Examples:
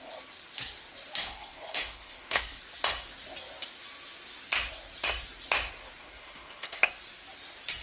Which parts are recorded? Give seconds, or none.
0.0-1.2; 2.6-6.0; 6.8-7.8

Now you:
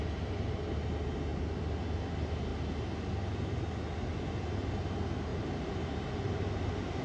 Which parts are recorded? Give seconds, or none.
0.0-5.3; 6.1-7.0